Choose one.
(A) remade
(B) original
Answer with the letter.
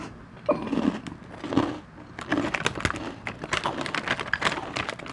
B